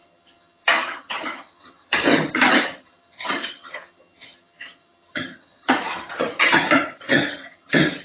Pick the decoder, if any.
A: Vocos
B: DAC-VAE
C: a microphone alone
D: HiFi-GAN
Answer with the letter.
D